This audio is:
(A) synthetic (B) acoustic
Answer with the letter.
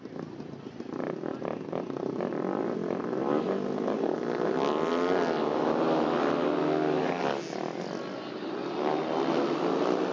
B